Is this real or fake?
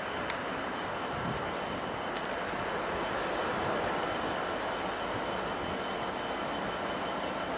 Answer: real